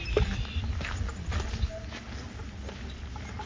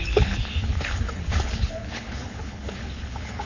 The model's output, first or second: second